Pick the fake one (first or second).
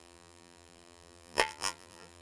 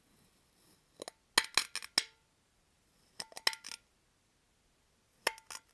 first